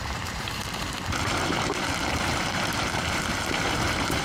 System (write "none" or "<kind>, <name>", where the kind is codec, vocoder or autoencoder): vocoder, BigVGAN v2